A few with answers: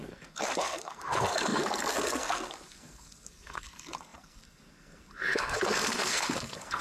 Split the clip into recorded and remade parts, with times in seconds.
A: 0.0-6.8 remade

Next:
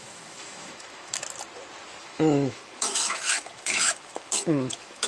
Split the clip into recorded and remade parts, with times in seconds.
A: 0.0-1.2 remade; 1.2-2.0 recorded; 2.0-5.1 remade

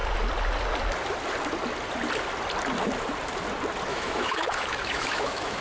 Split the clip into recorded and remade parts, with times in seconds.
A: 0.0-3.9 recorded; 3.9-5.6 remade

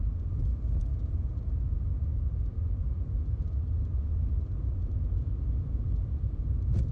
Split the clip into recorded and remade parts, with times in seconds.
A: 0.0-6.9 remade

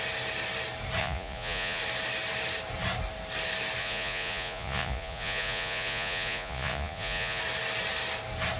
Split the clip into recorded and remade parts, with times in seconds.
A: 0.0-1.0 recorded; 1.0-1.8 remade; 1.8-3.8 recorded; 3.8-7.4 remade; 7.4-8.6 recorded

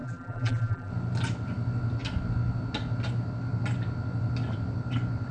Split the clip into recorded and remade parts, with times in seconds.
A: 0.0-0.9 remade; 0.9-5.3 recorded

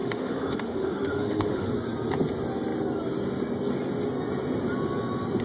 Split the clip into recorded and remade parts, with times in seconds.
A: 0.0-1.7 remade; 1.7-5.4 recorded

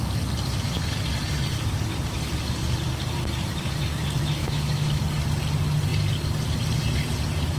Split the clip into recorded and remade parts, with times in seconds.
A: 0.0-4.4 recorded; 4.4-5.0 remade; 5.0-7.6 recorded